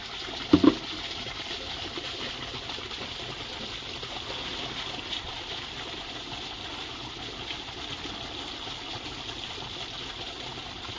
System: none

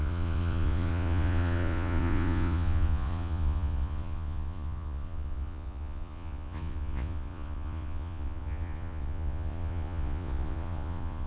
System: vocoder, Vocos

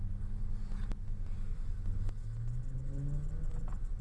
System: none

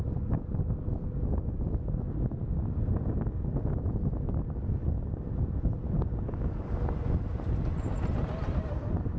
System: none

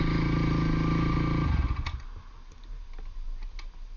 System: none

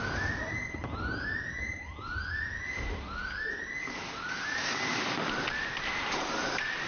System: none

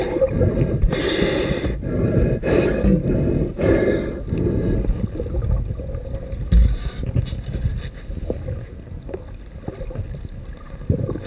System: none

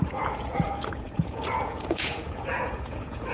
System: vocoder, Vocos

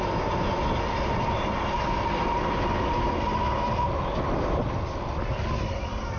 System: none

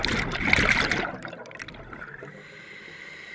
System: none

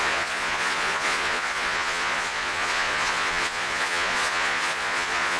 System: vocoder, Vocos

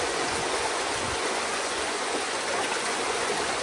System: vocoder, Vocos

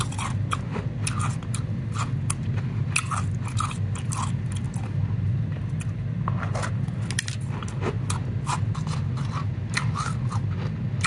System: none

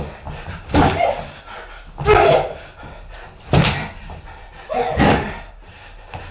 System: none